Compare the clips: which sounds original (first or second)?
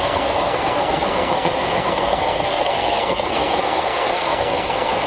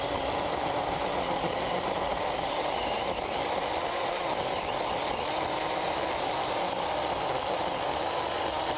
second